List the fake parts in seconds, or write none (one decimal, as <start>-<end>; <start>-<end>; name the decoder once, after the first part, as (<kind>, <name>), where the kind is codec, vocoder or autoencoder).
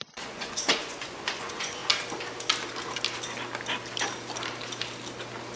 0.0-1.8 (vocoder, Vocos)